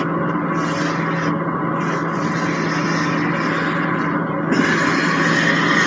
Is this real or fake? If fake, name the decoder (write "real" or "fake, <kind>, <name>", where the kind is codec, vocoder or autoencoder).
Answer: real